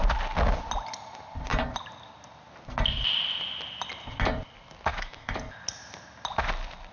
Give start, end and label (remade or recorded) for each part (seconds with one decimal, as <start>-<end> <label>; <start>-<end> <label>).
0.0-4.9 recorded; 4.9-5.4 remade; 5.4-6.9 recorded